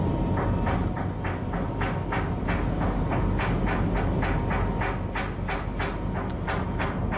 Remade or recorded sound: recorded